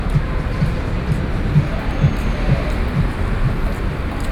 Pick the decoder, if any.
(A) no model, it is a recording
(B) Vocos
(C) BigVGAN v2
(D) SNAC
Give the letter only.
C